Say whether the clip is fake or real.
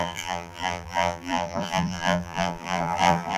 fake